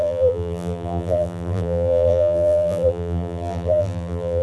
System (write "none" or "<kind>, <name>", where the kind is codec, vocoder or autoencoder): vocoder, BigVGAN v2